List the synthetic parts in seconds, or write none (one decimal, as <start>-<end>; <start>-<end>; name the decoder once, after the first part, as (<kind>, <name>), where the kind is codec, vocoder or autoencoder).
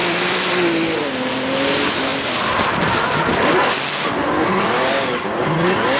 0.0-1.1 (vocoder, BigVGAN v2)